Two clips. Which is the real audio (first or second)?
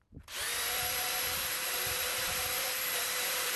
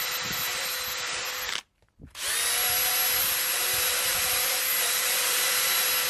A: second